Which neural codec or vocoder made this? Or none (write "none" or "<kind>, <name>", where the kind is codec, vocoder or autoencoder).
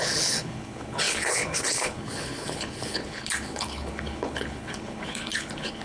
codec, HILCodec